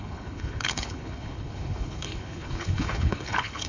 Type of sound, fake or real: fake